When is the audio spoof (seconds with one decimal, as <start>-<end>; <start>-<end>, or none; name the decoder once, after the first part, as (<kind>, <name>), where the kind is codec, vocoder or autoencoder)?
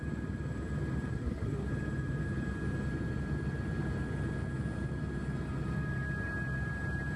1.1-1.7 (codec, SNAC)